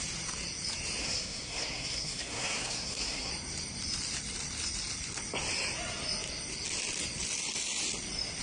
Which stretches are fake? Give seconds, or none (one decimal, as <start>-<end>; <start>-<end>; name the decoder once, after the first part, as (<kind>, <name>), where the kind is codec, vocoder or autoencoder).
1.0-3.3 (codec, SNAC)